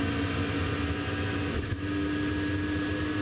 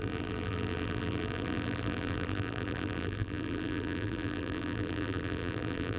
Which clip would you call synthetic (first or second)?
second